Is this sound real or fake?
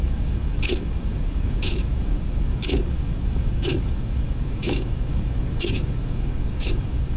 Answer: fake